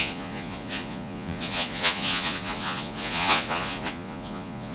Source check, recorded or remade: remade